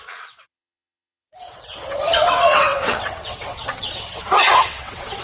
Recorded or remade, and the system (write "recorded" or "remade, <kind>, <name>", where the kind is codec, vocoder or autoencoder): remade, vocoder, WaveNeXt